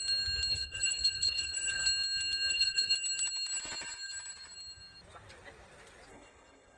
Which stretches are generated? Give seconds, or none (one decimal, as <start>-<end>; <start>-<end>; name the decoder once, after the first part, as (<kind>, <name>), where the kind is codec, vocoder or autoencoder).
0.5-1.9 (codec, HILCodec); 2.5-2.9; 6.1-6.8